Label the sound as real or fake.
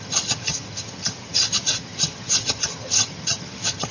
fake